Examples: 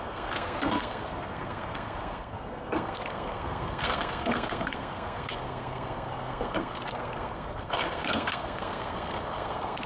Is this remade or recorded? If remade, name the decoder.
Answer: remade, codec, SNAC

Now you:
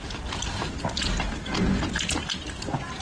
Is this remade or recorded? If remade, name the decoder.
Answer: recorded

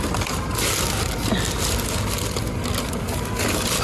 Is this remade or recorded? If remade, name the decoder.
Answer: recorded